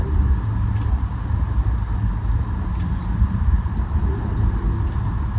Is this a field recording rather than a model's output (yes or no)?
yes